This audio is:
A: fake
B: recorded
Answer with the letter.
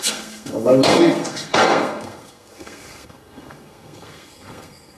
A